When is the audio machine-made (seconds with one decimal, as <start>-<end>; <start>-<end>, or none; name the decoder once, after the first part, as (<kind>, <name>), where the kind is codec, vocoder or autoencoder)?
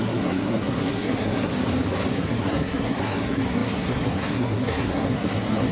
0.0-1.5 (codec, SNAC); 2.1-5.7